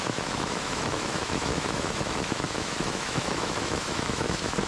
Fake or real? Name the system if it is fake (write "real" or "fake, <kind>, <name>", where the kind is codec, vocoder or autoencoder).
fake, autoencoder, DAC-VAE